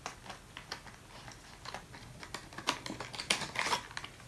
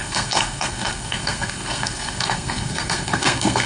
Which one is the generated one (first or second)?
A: second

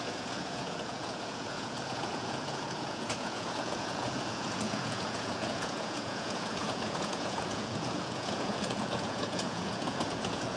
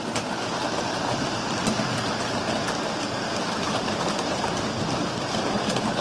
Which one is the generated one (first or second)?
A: first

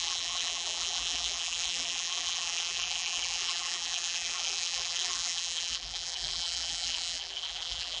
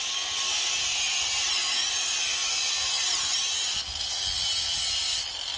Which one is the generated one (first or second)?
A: first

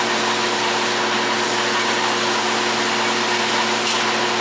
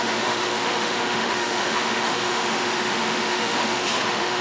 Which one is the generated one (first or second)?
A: second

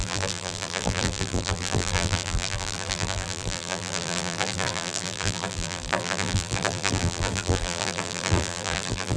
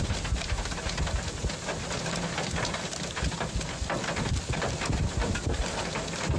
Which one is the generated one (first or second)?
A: first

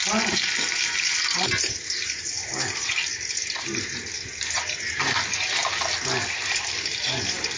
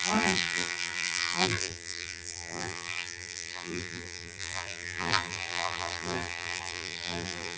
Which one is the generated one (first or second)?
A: second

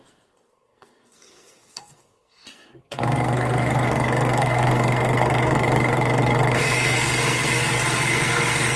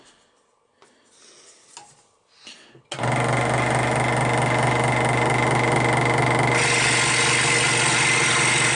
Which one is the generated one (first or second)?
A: first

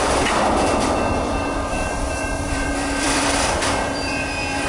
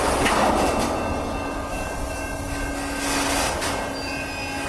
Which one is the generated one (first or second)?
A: first